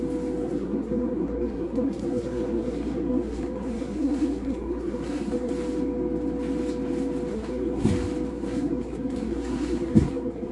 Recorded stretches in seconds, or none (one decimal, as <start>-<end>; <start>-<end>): 0.0-0.4; 5.5-7.3; 7.9-8.3